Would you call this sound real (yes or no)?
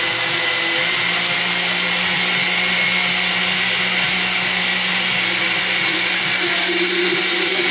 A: yes